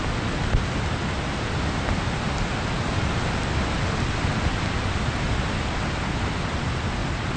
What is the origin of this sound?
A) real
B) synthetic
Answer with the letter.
A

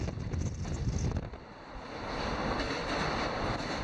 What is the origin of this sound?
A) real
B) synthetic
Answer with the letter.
A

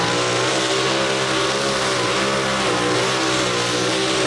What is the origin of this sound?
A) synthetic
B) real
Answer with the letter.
B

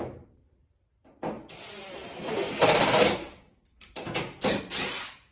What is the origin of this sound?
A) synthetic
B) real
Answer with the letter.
B